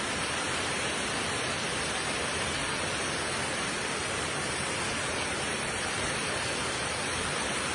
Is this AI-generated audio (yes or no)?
no